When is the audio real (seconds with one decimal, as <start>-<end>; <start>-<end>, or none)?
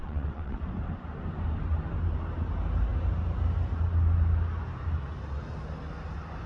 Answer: 0.6-6.5